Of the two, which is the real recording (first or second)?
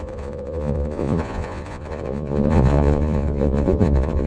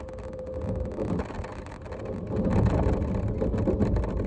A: second